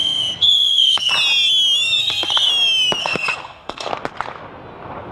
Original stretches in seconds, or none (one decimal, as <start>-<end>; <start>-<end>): 1.1-2.0; 2.5-3.0; 3.9-5.1